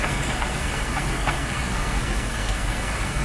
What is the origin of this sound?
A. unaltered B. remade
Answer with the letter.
B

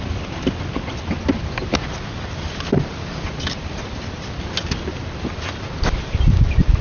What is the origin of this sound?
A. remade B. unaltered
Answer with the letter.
B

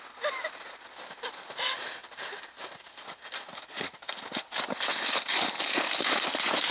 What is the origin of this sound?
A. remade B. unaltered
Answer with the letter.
B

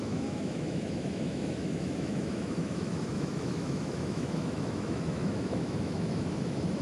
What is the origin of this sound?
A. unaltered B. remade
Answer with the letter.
B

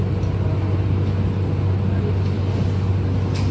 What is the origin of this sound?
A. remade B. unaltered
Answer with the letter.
B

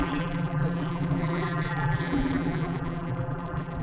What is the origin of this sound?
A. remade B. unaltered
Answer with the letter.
A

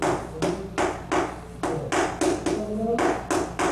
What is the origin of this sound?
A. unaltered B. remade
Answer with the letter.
A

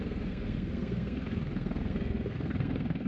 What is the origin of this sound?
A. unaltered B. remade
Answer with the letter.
B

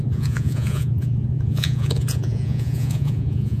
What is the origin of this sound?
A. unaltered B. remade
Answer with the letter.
B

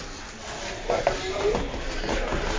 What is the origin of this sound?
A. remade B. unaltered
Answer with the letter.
B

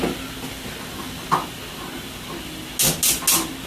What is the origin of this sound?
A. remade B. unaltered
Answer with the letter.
B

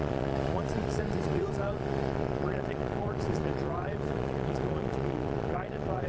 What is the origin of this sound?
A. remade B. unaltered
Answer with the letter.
A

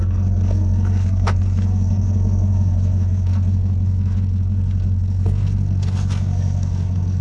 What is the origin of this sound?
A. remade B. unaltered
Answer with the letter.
A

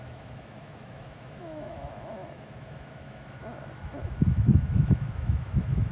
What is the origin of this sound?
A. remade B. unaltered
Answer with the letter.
A